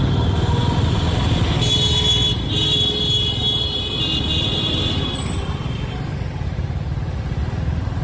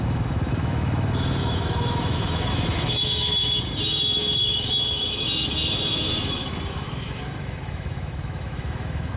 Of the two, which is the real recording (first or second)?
first